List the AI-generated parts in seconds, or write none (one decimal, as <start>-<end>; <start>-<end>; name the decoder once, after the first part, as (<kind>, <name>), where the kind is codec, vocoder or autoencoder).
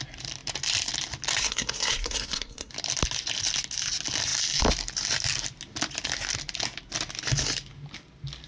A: 1.4-2.7 (codec, SNAC)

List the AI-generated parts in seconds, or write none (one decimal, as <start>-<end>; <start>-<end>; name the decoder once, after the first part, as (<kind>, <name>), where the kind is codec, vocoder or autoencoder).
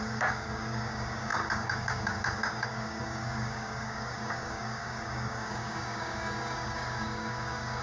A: 0.0-7.8 (codec, DAC)